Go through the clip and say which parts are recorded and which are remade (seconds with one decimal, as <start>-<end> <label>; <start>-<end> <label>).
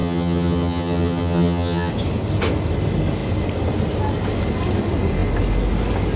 0.0-1.9 remade; 1.9-6.2 recorded